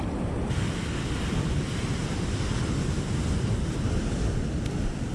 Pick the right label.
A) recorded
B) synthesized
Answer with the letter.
A